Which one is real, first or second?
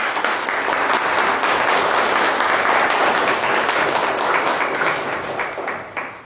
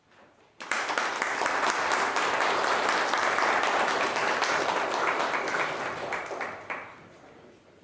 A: first